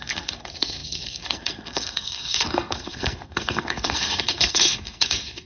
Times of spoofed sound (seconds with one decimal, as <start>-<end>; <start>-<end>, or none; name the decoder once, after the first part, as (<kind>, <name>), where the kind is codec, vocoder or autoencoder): 0.0-5.5 (codec, SNAC)